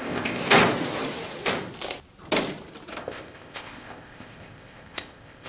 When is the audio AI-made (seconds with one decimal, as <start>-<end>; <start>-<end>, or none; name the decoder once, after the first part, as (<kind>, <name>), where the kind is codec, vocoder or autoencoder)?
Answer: 0.0-0.4 (codec, ZipCodec); 3.0-5.5